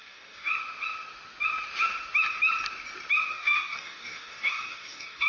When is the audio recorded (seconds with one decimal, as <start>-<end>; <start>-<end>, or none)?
0.5-3.3